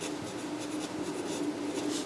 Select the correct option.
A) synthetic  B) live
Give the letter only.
B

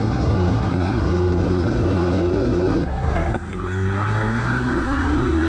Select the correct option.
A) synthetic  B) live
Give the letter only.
A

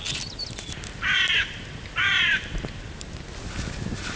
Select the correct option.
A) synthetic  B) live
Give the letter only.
B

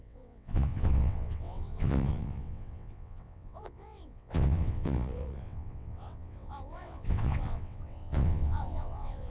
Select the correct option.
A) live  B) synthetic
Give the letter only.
B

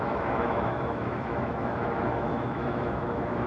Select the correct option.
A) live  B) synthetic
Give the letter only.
B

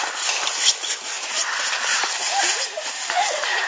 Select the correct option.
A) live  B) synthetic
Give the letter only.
A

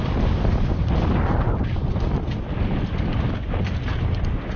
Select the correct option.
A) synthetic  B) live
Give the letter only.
B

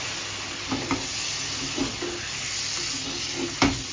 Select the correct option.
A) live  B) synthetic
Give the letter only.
A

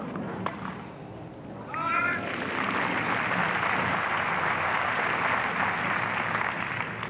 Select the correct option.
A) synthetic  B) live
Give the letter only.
B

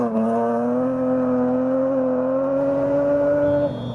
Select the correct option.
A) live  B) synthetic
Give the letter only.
A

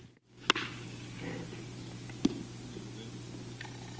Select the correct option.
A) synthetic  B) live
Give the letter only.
B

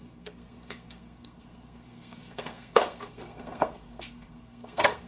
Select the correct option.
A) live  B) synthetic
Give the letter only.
B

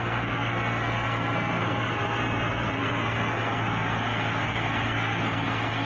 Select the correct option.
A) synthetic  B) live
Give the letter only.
A